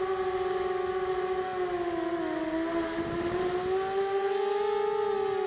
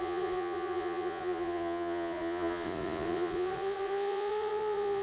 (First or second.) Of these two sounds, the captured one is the first